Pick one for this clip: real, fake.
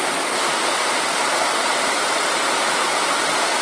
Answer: fake